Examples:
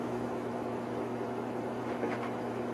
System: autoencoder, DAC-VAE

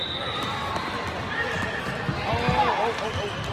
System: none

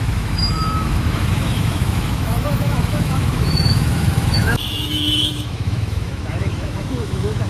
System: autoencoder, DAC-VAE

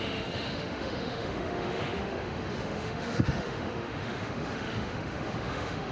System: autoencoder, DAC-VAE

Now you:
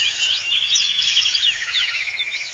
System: autoencoder, DAC-VAE